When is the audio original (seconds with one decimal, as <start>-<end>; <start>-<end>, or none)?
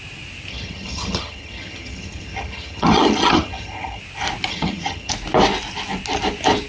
0.0-0.5; 4.0-4.5; 5.1-6.7